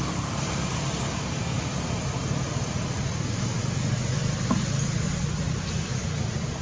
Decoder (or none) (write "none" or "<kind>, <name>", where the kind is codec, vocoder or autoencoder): none